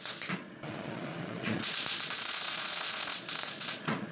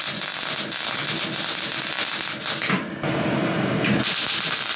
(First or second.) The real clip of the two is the second